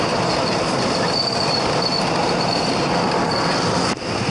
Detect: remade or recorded recorded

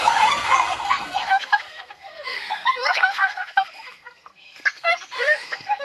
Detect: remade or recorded remade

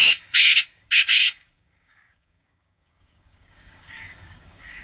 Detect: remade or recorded remade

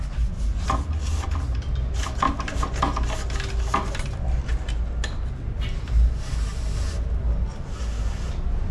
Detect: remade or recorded recorded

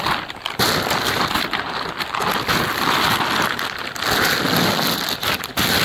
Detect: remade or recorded recorded